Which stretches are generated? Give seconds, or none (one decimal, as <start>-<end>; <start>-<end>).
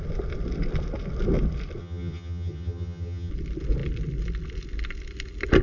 1.8-3.3